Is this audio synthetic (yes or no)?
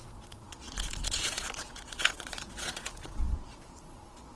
yes